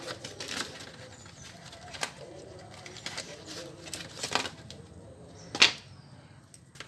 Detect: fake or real real